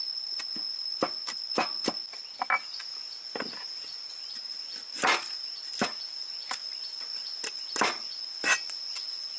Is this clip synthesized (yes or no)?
no